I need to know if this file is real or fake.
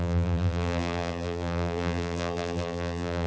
fake